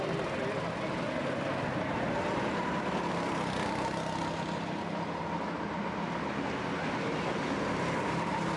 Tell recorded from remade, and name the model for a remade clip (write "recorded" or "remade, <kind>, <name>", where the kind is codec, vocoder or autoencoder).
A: recorded